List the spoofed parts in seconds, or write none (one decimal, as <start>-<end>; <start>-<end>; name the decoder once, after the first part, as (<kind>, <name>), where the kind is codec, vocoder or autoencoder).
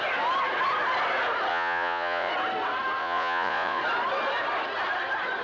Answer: 1.5-2.3 (vocoder, Vocos); 3.0-3.8